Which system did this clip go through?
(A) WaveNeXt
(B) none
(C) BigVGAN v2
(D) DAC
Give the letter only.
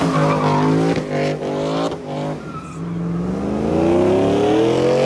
B